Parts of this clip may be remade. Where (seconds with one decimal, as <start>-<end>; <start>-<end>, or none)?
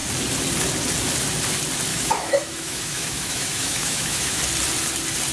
1.9-4.4